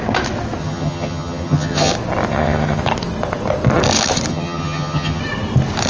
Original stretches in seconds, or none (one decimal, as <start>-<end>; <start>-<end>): 0.0-0.6; 1.9-2.3; 2.8-4.3; 5.2-5.9